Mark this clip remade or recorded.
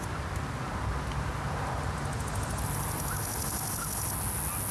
recorded